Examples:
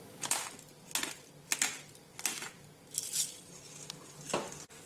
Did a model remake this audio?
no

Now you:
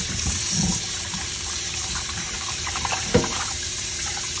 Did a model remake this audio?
yes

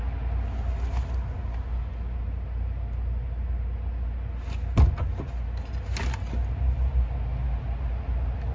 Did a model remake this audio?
no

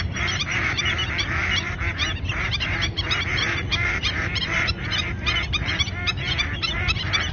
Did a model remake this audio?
yes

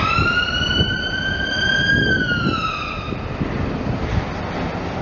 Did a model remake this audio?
yes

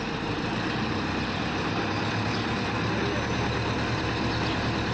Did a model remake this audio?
yes